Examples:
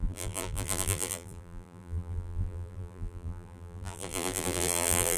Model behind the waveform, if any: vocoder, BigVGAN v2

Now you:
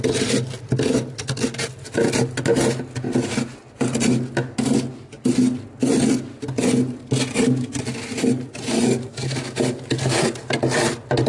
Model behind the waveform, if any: none